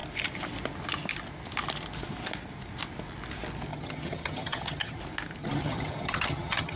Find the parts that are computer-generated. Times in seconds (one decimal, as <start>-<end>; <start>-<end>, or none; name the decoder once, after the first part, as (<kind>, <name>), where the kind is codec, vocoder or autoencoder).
3.7-5.0 (vocoder, HiFi-GAN); 5.4-6.8